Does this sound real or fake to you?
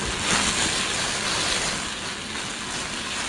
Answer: real